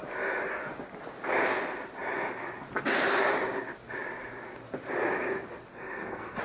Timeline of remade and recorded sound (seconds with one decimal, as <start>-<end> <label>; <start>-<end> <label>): 0.0-5.7 recorded; 5.7-6.4 remade